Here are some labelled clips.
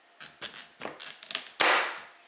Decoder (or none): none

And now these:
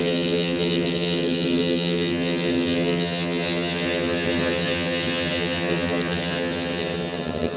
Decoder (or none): vocoder, HiFi-GAN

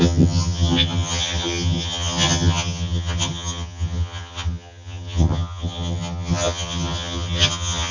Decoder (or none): vocoder, HiFi-GAN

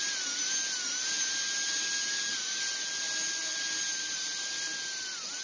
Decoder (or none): none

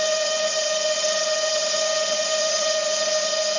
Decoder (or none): vocoder, HiFi-GAN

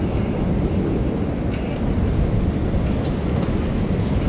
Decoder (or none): none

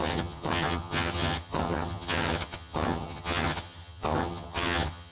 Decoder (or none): vocoder, HiFi-GAN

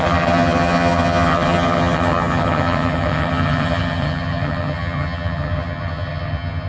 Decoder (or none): vocoder, HiFi-GAN